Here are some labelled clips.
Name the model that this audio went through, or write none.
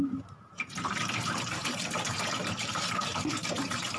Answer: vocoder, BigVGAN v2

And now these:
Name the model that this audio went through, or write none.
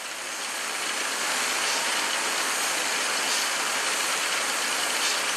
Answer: none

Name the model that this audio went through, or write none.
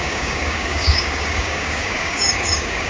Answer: codec, DAC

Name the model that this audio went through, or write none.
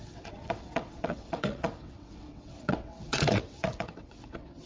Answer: vocoder, WaveNeXt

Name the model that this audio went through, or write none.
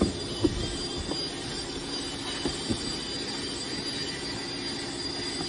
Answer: none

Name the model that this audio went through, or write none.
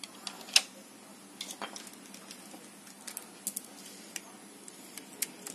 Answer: none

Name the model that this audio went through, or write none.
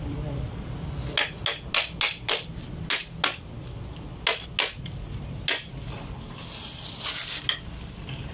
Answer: none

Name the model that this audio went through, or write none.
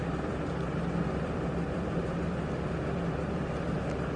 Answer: vocoder, BigVGAN v2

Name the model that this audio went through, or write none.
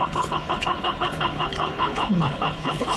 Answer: codec, HILCodec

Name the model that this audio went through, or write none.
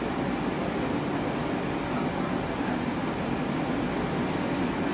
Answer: none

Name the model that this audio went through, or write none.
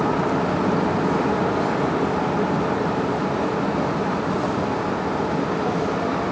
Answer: none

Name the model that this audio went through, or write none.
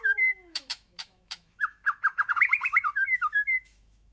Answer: autoencoder, DAC-VAE